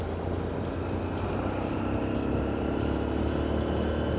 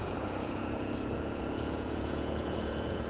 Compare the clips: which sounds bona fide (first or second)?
first